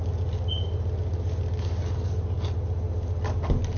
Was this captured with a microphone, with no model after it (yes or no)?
yes